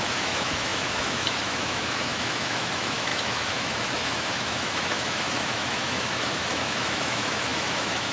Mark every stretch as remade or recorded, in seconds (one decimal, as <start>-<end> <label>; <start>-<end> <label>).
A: 0.0-8.1 remade